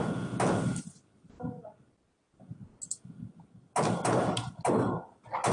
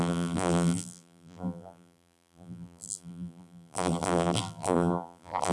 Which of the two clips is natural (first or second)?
first